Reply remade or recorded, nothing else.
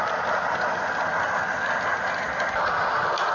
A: recorded